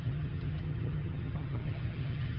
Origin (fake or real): fake